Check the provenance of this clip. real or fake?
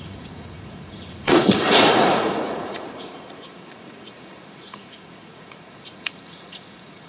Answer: fake